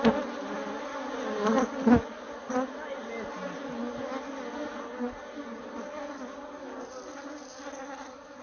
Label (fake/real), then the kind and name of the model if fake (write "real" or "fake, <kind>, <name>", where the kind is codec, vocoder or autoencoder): real